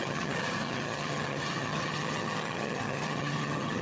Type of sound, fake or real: fake